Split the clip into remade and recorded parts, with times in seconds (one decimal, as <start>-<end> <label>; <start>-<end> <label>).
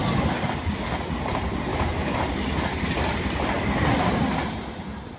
0.0-1.7 recorded; 1.7-2.2 remade; 2.2-5.2 recorded